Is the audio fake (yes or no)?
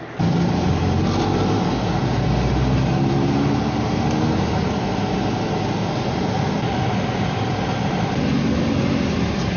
no